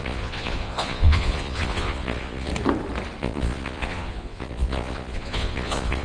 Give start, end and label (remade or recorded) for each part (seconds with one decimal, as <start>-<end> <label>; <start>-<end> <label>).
0.0-2.5 remade; 2.5-3.2 recorded; 3.2-6.0 remade